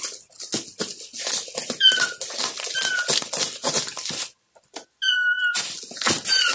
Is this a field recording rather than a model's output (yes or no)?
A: yes